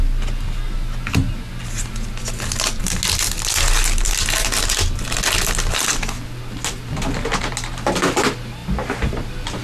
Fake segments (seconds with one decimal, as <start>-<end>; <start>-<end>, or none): none